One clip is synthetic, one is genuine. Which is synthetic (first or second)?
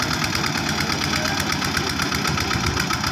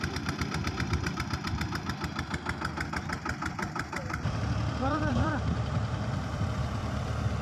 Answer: second